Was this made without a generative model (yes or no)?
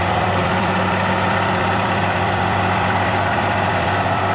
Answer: no